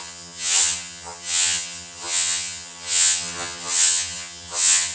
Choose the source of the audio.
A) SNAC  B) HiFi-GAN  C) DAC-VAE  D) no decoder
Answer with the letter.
B